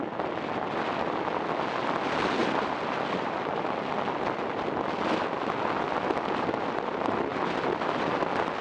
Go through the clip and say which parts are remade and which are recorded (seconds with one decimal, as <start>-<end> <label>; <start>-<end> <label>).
0.0-2.4 recorded; 2.4-3.8 remade; 3.8-7.3 recorded; 7.3-8.1 remade; 8.1-8.6 recorded